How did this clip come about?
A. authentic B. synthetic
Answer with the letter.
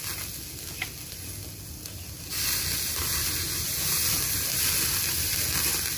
A